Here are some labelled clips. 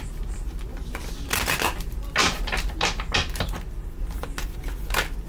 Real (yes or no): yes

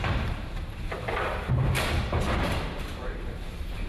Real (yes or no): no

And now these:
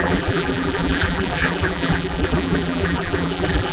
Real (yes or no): no